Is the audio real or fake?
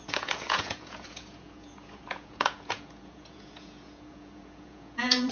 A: fake